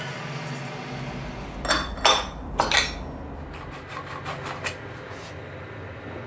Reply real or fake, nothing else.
real